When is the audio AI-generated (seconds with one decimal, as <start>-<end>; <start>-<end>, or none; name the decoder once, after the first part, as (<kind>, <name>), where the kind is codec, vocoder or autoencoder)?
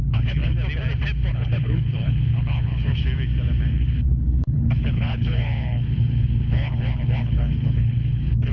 0.0-0.5 (codec, HILCodec); 1.3-2.9; 3.7-8.5